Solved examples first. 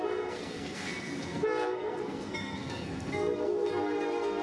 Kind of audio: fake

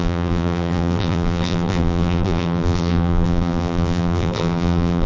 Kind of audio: fake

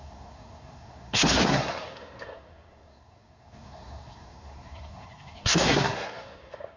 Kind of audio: fake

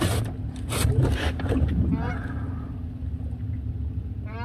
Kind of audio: real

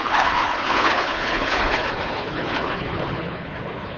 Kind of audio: fake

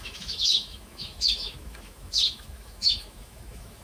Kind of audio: fake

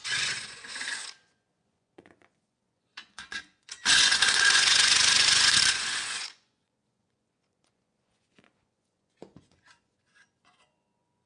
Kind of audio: fake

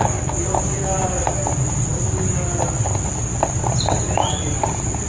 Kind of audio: fake